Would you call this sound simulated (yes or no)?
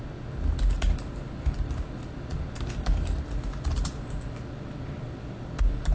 no